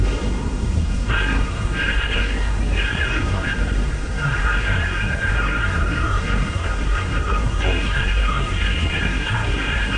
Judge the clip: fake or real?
fake